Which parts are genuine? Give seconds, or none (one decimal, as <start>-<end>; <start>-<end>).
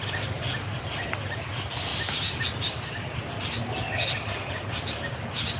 0.0-5.6